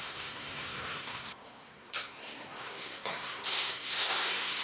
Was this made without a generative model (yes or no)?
no